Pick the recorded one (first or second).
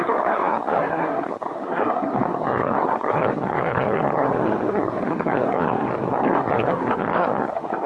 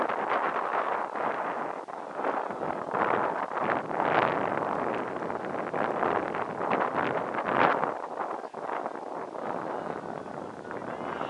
second